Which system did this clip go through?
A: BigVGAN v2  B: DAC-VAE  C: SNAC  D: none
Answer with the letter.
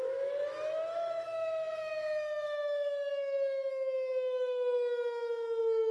B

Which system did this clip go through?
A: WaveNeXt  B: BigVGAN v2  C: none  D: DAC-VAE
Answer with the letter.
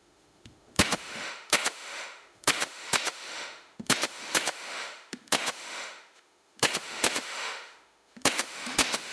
D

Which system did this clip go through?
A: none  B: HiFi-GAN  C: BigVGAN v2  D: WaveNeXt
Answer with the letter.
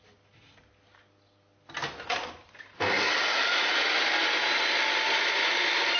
A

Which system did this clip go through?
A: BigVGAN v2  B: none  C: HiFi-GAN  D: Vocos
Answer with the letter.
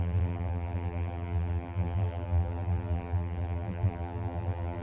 A